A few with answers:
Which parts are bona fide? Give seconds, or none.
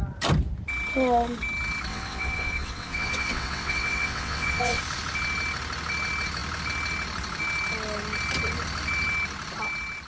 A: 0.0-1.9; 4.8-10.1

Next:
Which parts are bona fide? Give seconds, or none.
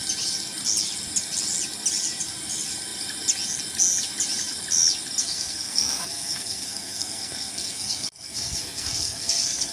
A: 0.0-5.2